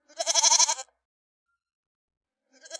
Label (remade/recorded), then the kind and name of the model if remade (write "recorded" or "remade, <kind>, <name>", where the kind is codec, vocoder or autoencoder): recorded